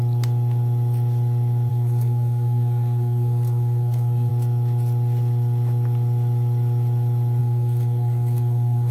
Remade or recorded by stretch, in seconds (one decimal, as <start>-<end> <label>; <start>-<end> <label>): 0.0-1.7 recorded; 1.7-4.3 remade; 4.3-7.4 recorded; 7.4-8.9 remade